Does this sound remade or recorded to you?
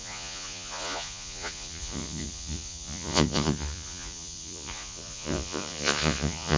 remade